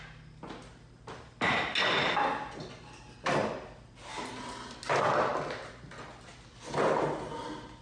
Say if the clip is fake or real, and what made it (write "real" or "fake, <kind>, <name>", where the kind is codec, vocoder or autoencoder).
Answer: real